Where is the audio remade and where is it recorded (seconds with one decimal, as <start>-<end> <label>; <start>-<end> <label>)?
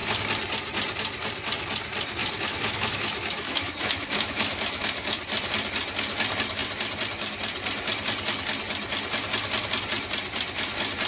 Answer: 0.0-2.2 recorded; 2.2-5.2 remade; 5.2-11.1 recorded